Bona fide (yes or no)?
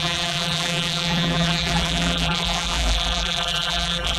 no